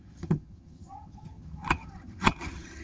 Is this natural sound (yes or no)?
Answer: no